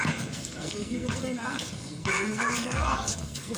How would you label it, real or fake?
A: fake